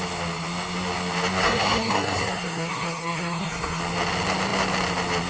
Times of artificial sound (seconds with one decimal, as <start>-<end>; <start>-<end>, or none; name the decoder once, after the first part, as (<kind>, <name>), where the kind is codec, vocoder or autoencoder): 1.4-3.8 (codec, SNAC)